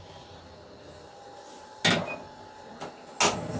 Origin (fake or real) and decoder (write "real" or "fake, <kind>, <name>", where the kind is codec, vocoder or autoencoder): real